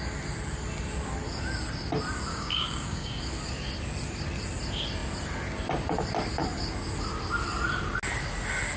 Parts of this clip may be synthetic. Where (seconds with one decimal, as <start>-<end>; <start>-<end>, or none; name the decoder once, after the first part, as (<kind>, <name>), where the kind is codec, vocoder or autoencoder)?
2.3-3.2 (codec, DAC)

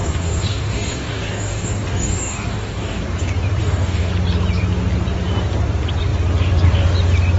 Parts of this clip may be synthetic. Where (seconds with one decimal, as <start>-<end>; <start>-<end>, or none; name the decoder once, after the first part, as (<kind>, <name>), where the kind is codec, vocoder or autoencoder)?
0.0-3.0 (codec, DAC); 3.6-4.1

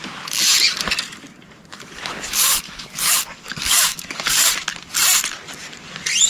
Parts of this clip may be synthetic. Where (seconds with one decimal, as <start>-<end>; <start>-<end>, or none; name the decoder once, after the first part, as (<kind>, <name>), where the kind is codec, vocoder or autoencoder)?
1.7-4.5 (codec, DAC)

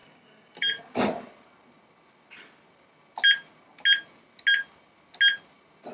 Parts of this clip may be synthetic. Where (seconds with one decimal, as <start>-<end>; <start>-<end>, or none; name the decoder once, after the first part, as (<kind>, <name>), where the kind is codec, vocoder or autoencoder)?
0.0-0.8 (codec, DAC)

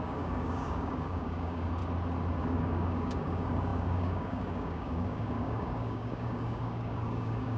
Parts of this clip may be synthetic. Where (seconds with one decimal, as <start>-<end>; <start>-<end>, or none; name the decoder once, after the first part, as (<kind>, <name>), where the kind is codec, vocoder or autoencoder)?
0.0-1.8 (codec, DAC); 2.4-7.6

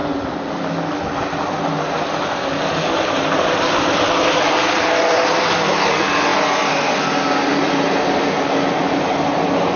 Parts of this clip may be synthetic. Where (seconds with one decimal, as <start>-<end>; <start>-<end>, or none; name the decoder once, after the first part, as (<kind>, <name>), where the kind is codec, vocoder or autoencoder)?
none

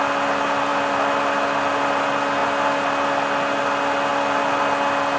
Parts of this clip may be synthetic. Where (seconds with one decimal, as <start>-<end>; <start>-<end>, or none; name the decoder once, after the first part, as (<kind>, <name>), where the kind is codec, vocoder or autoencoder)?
none

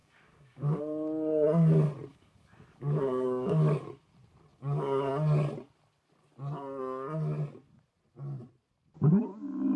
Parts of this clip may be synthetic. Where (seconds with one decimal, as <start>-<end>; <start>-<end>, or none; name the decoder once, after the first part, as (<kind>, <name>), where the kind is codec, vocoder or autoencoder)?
0.0-0.8 (codec, DAC); 2.1-3.8; 4.5-5.1